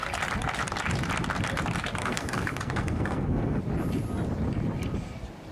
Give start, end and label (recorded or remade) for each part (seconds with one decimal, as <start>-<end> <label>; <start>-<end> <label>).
0.0-2.0 recorded; 2.0-3.6 remade; 3.6-5.5 recorded